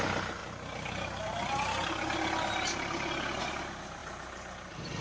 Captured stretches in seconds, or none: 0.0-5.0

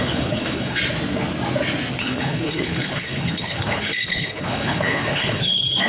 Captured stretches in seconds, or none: 0.8-2.0

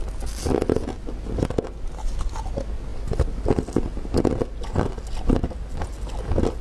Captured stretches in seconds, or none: 0.0-6.6

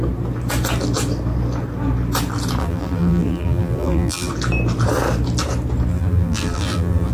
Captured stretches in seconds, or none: 0.0-2.6; 4.3-5.9

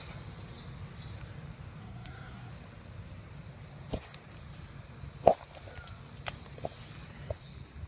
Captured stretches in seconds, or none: 0.0-1.8; 2.5-7.9

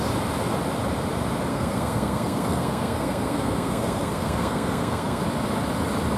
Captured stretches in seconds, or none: 0.0-1.5; 5.2-6.2

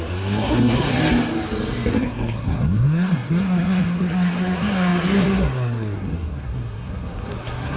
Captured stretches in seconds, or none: 0.9-1.9